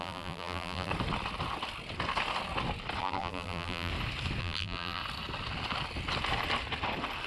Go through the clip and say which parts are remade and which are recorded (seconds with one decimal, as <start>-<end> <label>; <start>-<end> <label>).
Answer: 0.0-0.9 remade; 0.9-3.0 recorded; 3.0-3.9 remade; 3.9-4.4 recorded; 4.4-5.0 remade; 5.0-7.3 recorded